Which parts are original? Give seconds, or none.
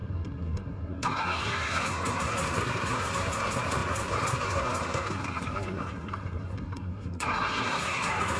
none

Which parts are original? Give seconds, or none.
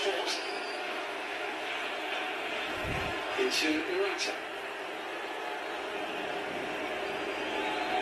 1.7-8.0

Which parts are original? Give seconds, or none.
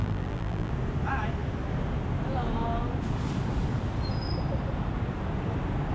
0.7-5.9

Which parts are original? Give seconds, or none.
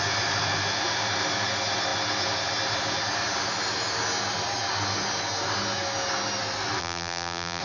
0.0-6.8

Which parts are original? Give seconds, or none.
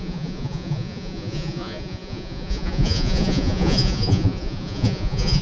none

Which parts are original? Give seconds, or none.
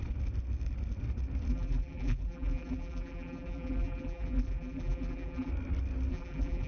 0.0-1.5; 5.5-6.1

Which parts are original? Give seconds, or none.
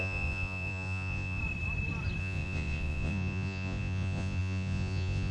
1.4-2.2